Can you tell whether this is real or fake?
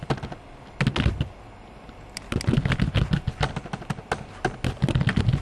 real